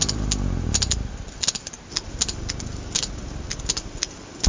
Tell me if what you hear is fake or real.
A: real